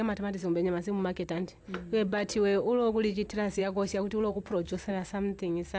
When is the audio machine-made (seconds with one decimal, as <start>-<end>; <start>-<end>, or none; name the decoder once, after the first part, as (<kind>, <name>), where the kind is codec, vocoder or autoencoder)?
3.6-4.9 (vocoder, Vocos)